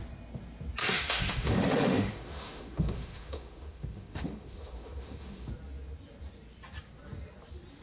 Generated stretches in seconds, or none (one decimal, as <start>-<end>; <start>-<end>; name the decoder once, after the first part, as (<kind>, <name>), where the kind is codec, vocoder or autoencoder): 0.8-5.5 (autoencoder, DAC-VAE)